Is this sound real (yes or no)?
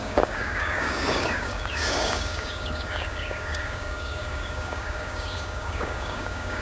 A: no